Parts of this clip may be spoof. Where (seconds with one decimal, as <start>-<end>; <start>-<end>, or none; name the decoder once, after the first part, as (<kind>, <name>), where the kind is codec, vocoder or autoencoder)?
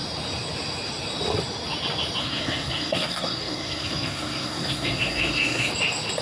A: 2.2-5.7 (codec, SNAC)